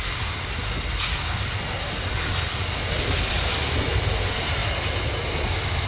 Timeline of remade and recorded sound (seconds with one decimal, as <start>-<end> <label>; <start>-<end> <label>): 0.0-5.9 recorded